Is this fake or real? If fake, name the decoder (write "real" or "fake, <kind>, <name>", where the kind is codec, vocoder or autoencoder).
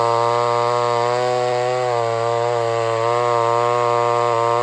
real